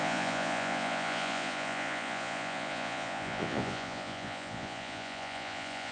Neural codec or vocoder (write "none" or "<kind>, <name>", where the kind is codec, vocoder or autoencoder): vocoder, Vocos